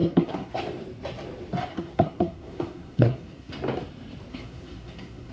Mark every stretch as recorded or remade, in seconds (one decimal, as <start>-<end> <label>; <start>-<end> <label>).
0.0-0.6 remade; 0.6-1.7 recorded; 1.7-3.5 remade; 3.5-4.3 recorded; 4.3-5.3 remade